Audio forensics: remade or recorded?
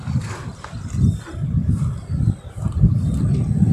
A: recorded